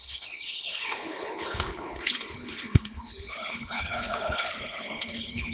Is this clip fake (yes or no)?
yes